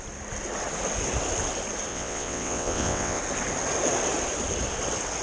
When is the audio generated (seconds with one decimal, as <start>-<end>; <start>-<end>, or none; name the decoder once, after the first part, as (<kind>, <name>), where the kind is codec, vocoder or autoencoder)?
1.9-3.2 (vocoder, WaveNeXt)